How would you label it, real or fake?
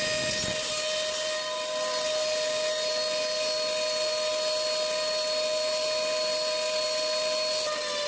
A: real